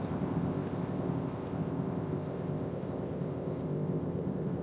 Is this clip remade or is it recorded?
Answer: remade